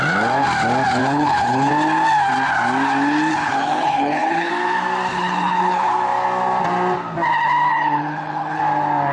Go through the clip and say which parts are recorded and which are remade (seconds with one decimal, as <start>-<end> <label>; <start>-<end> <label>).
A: 0.0-1.0 recorded; 1.0-1.7 remade; 1.7-3.4 recorded; 3.4-4.5 remade; 4.5-5.1 recorded; 5.1-5.9 remade; 5.9-7.7 recorded; 7.7-8.6 remade; 8.6-9.1 recorded

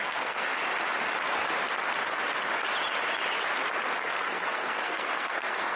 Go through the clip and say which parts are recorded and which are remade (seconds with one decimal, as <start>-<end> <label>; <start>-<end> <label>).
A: 0.0-0.6 remade; 0.6-4.1 recorded; 4.1-5.8 remade

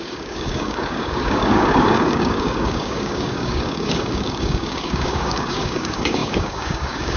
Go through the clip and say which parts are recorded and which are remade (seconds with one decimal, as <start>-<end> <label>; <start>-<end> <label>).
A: 0.0-7.2 remade

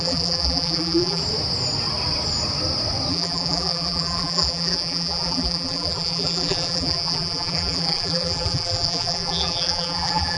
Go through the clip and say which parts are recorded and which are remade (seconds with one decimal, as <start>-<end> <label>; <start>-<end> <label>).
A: 0.0-1.2 remade; 1.2-3.1 recorded; 3.1-10.4 remade

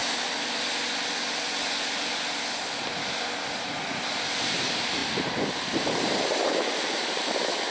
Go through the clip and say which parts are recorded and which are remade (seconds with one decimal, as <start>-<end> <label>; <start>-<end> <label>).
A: 0.0-4.5 recorded; 4.5-7.7 remade